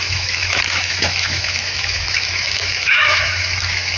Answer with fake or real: fake